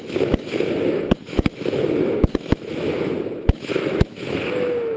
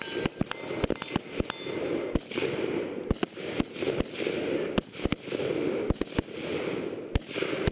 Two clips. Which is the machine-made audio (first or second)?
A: first